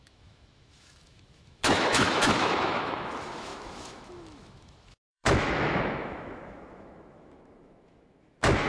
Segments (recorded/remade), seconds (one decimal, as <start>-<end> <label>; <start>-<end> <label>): 0.0-8.7 remade